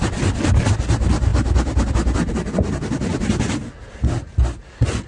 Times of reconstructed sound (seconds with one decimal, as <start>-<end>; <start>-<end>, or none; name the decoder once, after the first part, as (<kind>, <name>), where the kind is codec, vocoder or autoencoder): none